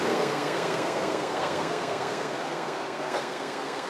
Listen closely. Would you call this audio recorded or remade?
remade